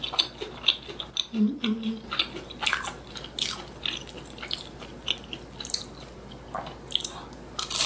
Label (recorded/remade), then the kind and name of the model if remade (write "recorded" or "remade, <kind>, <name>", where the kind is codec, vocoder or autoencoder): recorded